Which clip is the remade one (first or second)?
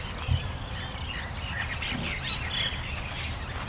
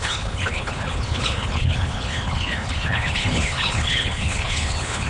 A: second